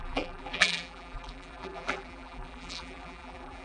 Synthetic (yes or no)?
yes